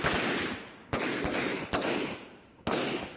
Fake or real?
real